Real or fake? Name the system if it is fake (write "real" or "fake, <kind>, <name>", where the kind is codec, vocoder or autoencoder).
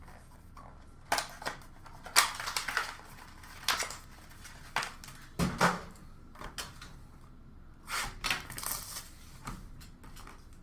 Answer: real